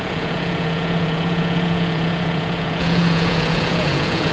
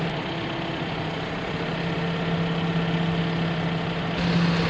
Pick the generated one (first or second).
first